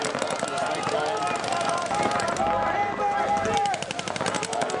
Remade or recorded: recorded